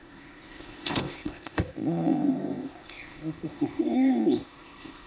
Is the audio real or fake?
fake